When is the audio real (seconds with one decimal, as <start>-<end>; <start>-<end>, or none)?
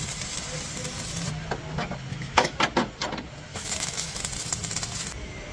0.0-2.1; 2.6-3.5; 4.2-5.5